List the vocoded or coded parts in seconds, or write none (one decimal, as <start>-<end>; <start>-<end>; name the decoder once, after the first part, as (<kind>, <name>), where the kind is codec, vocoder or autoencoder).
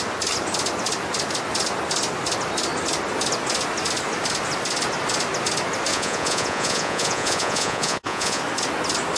5.9-8.4 (vocoder, Vocos)